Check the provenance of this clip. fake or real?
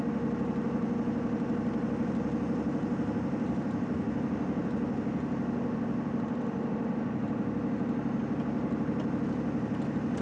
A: real